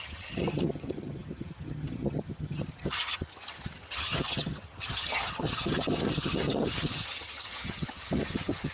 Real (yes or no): no